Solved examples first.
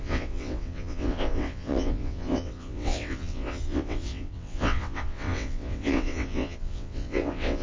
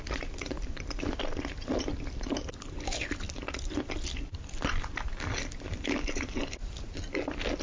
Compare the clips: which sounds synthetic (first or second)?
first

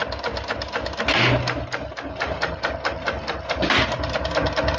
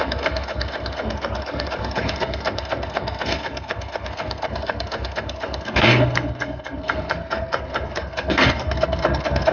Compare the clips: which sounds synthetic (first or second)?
second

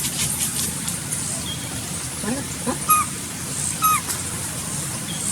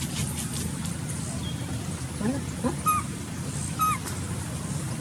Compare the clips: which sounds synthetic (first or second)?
first